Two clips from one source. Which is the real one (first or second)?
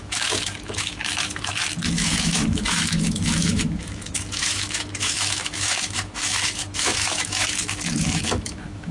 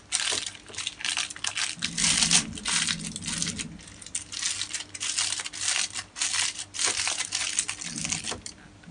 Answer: second